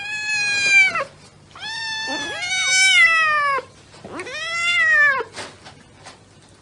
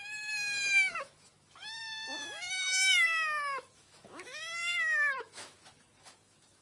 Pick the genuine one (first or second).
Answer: first